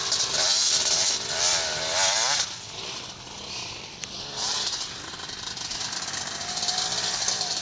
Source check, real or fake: fake